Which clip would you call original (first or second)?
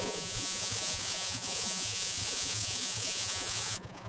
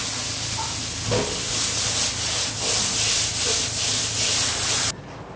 second